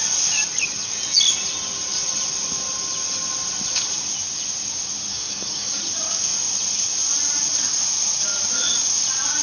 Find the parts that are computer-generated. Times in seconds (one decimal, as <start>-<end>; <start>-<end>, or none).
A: 5.1-5.8